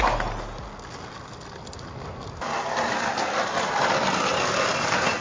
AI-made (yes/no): no